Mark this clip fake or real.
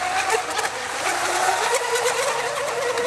real